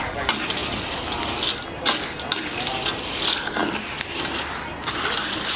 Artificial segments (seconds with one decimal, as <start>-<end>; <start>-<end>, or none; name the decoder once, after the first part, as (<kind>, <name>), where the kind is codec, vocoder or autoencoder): none